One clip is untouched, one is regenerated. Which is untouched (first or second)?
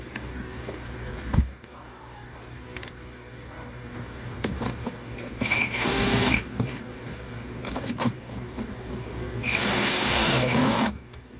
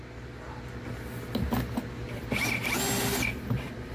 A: second